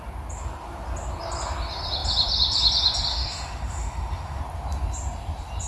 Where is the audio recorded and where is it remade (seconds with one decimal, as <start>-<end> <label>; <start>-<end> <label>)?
0.0-3.1 recorded; 3.1-4.4 remade; 4.4-5.7 recorded